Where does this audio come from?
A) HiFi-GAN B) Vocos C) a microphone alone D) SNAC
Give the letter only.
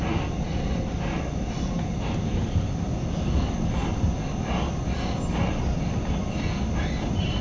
C